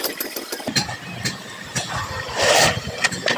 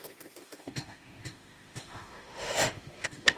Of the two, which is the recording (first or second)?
first